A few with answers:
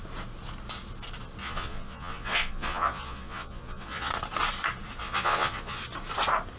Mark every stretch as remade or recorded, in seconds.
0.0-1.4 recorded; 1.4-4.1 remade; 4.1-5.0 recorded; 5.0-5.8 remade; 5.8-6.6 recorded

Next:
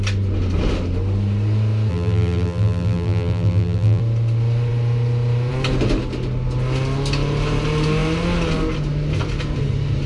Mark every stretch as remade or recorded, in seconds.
0.0-1.9 recorded; 1.9-4.0 remade; 4.0-10.1 recorded

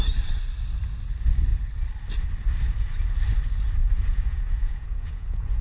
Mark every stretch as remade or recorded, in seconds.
0.0-3.8 recorded; 3.8-5.6 remade

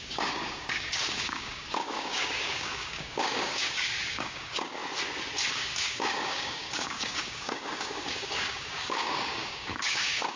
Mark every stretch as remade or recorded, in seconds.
0.0-4.8 remade; 4.8-5.5 recorded; 5.5-10.4 remade